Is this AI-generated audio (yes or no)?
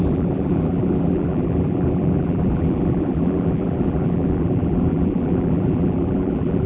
yes